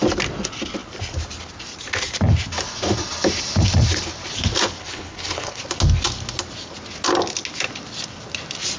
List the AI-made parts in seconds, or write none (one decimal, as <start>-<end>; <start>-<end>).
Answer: 4.8-5.6